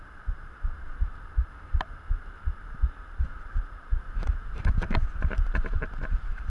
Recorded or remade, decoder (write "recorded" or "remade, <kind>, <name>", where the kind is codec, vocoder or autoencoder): remade, vocoder, BigVGAN v2